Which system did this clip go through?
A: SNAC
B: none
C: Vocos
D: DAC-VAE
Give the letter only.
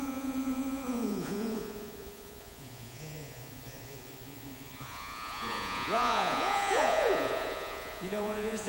C